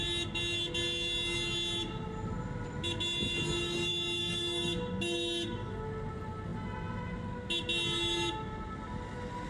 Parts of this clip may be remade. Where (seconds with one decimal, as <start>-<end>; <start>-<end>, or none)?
none